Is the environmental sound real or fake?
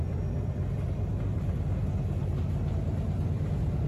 real